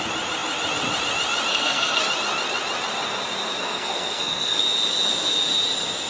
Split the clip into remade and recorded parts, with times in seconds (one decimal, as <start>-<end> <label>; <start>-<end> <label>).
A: 0.0-1.5 recorded; 1.5-2.0 remade; 2.0-3.6 recorded; 3.6-4.6 remade; 4.6-6.1 recorded